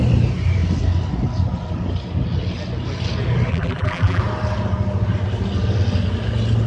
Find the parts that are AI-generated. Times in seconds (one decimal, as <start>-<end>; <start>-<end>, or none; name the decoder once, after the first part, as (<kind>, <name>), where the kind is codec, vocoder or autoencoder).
3.5-4.2 (vocoder, BigVGAN v2)

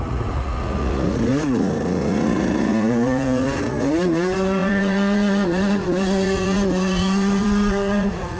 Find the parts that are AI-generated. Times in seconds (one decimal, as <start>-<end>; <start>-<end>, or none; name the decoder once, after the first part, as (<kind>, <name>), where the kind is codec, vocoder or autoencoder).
0.0-8.4 (vocoder, Vocos)

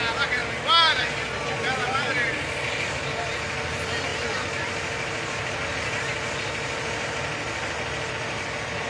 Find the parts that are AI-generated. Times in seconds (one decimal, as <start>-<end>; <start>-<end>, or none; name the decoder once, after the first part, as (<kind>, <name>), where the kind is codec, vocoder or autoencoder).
none

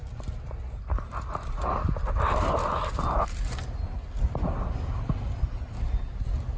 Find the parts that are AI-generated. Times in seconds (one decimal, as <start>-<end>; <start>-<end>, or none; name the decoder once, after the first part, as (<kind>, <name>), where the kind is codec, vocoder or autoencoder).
none

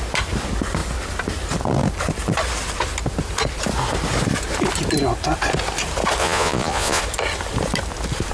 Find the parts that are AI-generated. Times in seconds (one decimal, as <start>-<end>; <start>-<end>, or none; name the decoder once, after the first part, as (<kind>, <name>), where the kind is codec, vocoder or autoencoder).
6.2-7.0 (vocoder, Vocos)